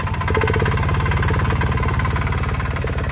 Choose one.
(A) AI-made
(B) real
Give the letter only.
B